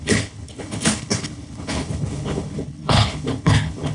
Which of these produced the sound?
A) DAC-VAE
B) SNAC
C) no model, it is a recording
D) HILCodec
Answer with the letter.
D